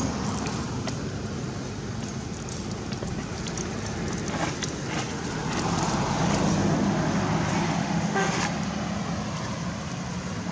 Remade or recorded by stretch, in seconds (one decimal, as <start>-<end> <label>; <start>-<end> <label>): 0.0-7.8 recorded; 7.8-8.4 remade; 8.4-10.5 recorded